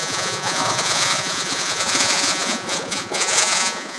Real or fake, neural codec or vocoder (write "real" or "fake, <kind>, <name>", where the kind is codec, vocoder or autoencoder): fake, vocoder, Vocos